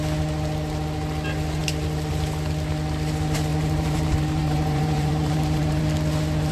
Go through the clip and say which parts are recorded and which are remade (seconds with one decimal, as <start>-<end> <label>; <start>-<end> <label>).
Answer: 0.0-3.5 recorded; 3.5-5.8 remade; 5.8-6.5 recorded